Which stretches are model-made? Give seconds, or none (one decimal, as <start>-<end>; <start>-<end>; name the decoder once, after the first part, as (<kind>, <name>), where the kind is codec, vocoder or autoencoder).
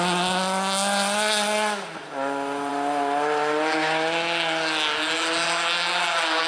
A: none